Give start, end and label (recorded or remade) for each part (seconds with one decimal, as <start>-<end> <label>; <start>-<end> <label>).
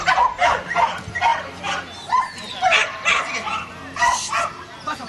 0.0-5.1 recorded